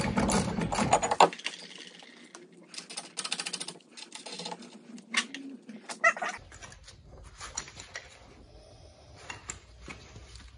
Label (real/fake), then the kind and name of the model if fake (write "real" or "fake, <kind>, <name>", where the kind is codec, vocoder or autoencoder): real